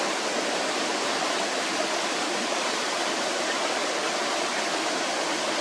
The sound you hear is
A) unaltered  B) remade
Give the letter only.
A